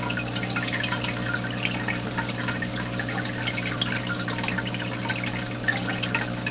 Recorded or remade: recorded